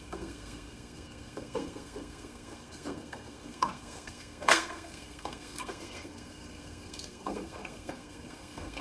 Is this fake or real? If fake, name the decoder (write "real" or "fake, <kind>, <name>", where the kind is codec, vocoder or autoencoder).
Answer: fake, codec, SNAC